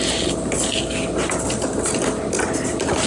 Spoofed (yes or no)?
no